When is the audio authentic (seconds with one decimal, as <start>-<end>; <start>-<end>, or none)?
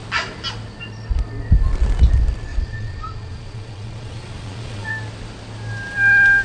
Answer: 0.0-2.5; 4.9-6.4